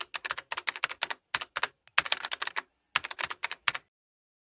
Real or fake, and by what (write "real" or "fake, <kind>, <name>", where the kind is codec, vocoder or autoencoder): real